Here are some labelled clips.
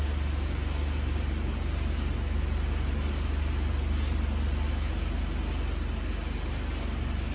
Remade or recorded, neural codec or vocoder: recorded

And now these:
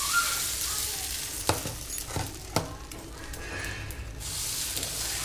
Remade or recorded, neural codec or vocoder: recorded